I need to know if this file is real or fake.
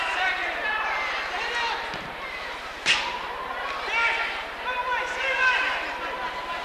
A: real